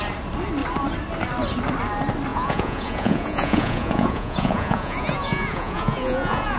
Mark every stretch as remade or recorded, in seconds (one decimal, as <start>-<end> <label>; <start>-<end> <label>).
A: 0.0-2.3 recorded; 2.3-6.6 remade